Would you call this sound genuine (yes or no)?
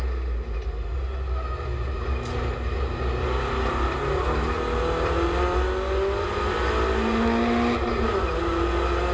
yes